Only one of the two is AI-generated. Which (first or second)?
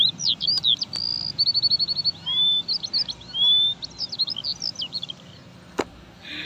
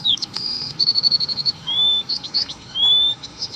second